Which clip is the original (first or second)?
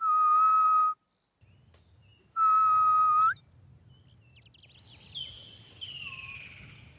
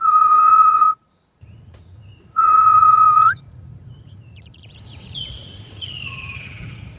first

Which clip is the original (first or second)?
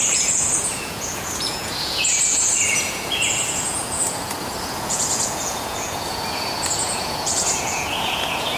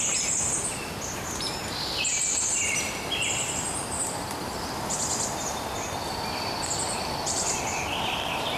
second